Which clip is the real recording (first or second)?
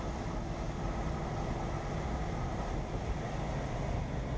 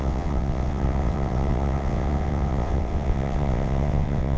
first